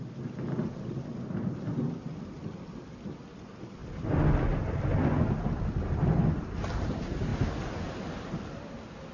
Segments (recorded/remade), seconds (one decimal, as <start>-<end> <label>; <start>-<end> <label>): 0.0-9.1 recorded